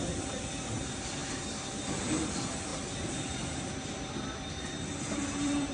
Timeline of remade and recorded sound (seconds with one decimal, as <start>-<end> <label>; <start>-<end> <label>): 0.0-5.7 remade